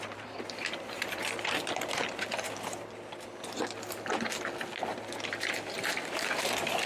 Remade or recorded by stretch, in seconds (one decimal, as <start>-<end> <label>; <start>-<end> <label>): 0.0-1.2 remade; 1.2-5.2 recorded; 5.2-6.9 remade